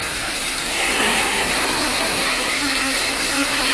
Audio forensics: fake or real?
fake